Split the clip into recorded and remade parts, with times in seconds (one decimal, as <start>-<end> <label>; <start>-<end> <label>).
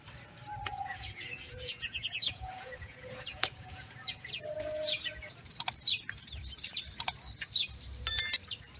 0.0-0.6 recorded; 0.6-5.5 remade; 5.5-8.8 recorded